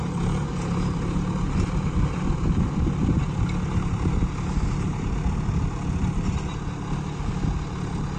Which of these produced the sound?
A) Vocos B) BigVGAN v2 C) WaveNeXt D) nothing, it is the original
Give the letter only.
D